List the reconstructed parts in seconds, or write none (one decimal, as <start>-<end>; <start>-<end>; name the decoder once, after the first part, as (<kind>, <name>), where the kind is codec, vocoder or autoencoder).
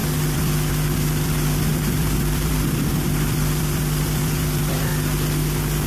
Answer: 0.0-4.9 (vocoder, BigVGAN v2)